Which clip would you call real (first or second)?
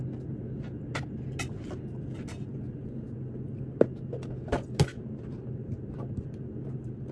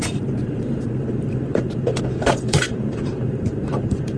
first